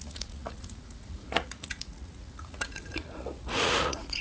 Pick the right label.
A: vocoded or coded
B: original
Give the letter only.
A